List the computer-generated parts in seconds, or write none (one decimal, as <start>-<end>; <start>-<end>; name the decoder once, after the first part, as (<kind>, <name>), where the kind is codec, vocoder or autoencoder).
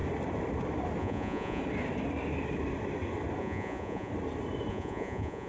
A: 1.0-1.6 (vocoder, Vocos); 3.4-4.1; 4.7-5.5